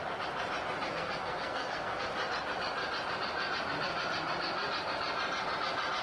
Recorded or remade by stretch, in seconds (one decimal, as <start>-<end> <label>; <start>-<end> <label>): 0.0-0.9 recorded; 0.9-2.1 remade; 2.1-6.0 recorded